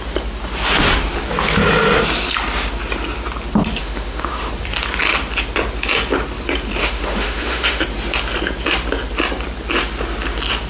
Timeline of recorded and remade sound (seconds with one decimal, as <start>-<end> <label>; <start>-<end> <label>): 0.0-3.8 recorded; 3.8-4.5 remade; 4.5-6.8 recorded; 6.8-7.8 remade; 7.8-10.7 recorded